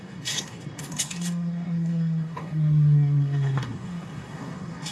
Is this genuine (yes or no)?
no